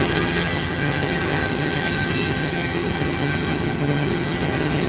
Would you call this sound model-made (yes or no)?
yes